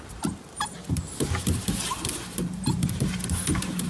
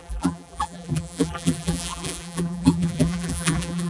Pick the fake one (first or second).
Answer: second